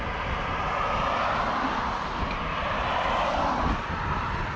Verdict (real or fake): real